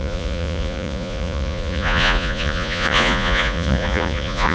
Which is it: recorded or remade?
remade